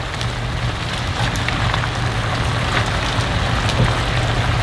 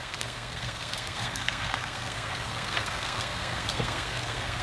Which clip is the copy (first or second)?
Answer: second